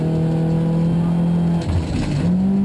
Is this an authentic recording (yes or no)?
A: yes